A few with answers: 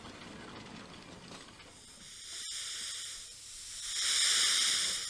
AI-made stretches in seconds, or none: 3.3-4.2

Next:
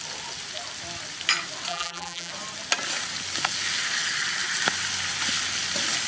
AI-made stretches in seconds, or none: 1.7-2.3